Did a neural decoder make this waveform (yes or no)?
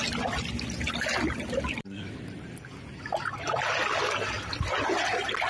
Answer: no